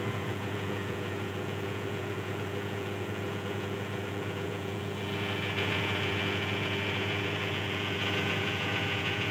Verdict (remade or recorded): remade